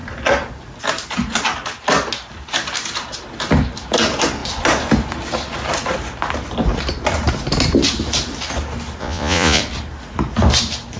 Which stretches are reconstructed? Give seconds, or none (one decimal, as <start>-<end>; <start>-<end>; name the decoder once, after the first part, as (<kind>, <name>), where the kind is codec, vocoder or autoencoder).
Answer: 9.0-9.6 (vocoder, Vocos)

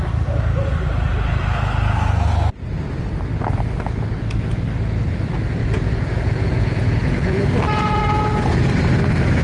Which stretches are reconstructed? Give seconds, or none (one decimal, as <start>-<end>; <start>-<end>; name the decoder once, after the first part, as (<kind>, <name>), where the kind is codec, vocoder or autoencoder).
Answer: 5.6-8.7 (vocoder, Vocos)